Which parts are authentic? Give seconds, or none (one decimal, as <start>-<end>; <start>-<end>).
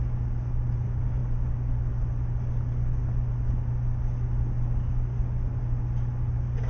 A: 0.0-6.7